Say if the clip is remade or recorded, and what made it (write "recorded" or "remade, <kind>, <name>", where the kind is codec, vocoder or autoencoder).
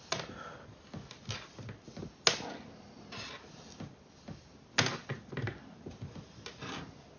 recorded